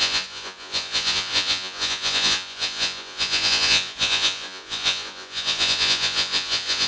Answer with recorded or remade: remade